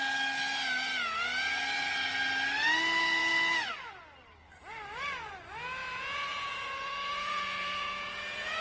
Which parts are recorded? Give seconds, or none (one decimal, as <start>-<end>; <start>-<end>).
0.0-5.8